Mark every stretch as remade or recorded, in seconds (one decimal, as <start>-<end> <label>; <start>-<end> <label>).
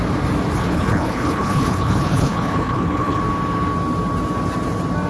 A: 0.0-0.6 recorded; 0.6-3.2 remade; 3.2-5.1 recorded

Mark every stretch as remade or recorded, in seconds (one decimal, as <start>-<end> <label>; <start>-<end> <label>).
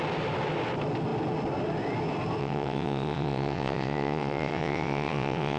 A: 0.0-2.4 recorded; 2.4-5.6 remade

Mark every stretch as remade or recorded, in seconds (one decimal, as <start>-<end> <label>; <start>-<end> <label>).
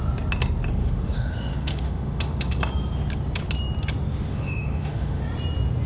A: 0.0-0.8 recorded; 0.8-2.5 remade; 2.5-4.3 recorded; 4.3-5.2 remade; 5.2-5.9 recorded